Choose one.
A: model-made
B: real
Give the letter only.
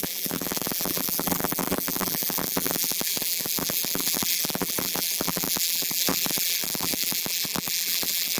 A